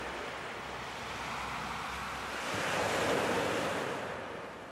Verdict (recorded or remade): recorded